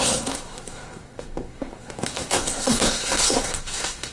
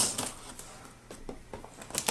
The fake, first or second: first